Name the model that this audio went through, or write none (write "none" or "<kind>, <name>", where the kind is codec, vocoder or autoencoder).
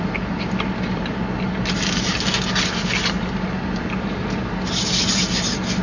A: none